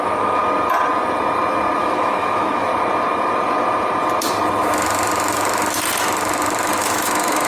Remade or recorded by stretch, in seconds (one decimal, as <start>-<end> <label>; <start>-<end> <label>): 0.0-0.4 remade; 0.4-1.8 recorded; 1.8-2.7 remade; 2.7-6.7 recorded; 6.7-7.5 remade